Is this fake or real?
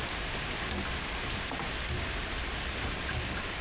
real